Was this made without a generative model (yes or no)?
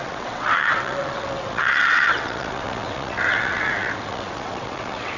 no